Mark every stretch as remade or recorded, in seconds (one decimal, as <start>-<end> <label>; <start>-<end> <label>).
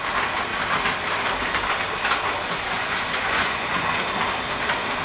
0.0-2.4 recorded; 2.4-4.0 remade; 4.0-5.0 recorded